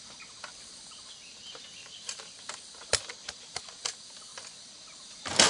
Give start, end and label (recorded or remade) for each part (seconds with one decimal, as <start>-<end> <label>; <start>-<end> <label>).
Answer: 0.0-5.5 recorded